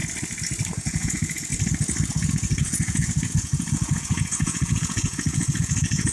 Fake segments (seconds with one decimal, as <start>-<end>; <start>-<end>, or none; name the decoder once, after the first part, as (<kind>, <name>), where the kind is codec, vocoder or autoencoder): 0.7-1.5 (vocoder, Vocos); 2.1-6.1